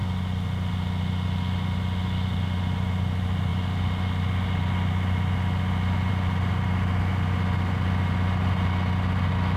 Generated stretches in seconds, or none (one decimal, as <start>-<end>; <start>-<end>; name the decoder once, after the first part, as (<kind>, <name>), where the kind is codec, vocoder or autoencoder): none